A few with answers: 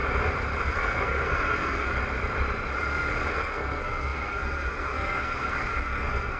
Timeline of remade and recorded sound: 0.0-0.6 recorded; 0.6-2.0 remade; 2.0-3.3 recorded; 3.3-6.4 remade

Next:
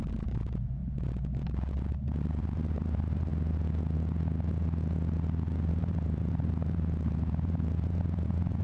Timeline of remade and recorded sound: 0.0-0.8 remade; 0.8-2.4 recorded; 2.4-3.3 remade; 3.3-5.7 recorded; 5.7-8.6 remade

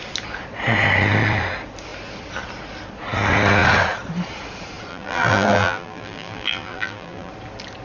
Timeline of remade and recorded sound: 0.0-4.9 recorded; 4.9-7.3 remade; 7.3-7.8 recorded

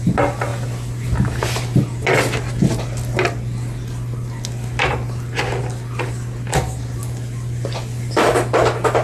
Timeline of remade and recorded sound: 0.0-9.0 recorded